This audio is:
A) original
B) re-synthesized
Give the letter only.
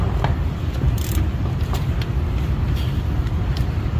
A